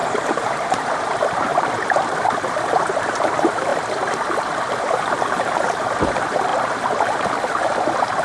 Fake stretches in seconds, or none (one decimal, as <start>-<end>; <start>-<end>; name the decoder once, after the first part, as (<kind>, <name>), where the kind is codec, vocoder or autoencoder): 0.0-1.5 (vocoder, BigVGAN v2); 2.8-3.7; 4.8-6.5; 7.6-8.2